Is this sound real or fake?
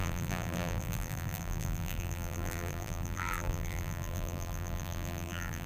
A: fake